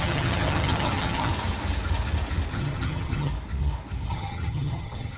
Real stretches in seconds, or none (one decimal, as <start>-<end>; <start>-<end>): 1.3-2.5; 3.3-4.1